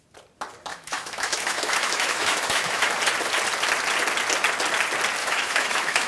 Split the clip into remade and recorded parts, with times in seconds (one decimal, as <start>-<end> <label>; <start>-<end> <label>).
0.0-0.7 recorded; 0.7-2.9 remade; 2.9-5.2 recorded; 5.2-6.1 remade